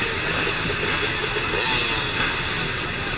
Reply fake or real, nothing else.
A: real